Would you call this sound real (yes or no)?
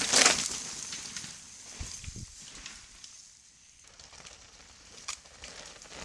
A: yes